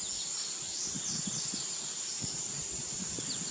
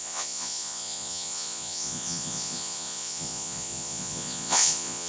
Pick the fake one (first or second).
second